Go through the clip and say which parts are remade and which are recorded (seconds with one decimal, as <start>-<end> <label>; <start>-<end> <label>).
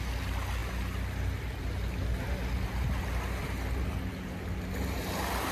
0.0-5.5 recorded